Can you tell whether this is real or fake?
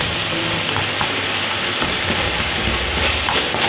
real